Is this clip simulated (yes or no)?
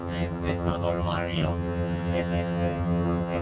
yes